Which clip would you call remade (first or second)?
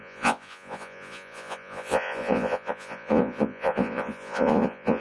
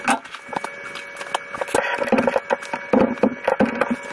first